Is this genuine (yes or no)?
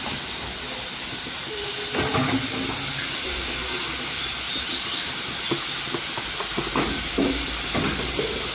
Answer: yes